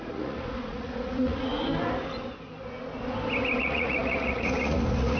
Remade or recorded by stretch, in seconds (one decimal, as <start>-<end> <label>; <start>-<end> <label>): 0.0-1.5 remade; 1.5-3.6 recorded; 3.6-5.2 remade

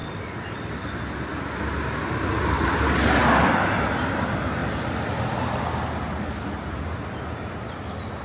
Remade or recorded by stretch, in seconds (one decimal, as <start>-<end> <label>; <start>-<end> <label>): 0.0-8.2 recorded

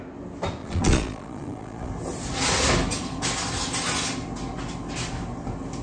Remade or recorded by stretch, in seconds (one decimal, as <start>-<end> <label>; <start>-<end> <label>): 0.0-0.6 recorded; 0.6-1.9 remade; 1.9-5.8 recorded

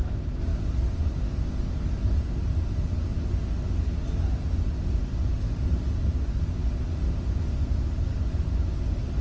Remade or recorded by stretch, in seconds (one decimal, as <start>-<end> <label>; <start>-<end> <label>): 0.0-9.2 recorded